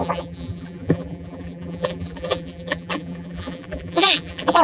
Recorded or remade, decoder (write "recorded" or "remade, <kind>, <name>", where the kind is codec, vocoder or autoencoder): remade, vocoder, BigVGAN v2